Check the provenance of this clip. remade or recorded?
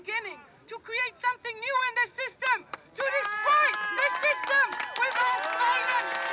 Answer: recorded